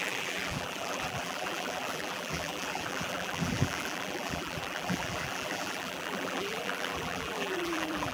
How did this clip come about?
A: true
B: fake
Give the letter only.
B